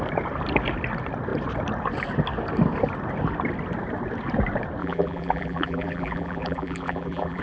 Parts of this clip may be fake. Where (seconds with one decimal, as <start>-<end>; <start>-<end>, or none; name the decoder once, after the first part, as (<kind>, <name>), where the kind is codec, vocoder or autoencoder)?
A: 4.8-7.4 (vocoder, BigVGAN v2)